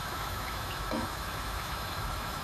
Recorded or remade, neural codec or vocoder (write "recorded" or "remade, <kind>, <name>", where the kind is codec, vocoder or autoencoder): remade, autoencoder, DAC-VAE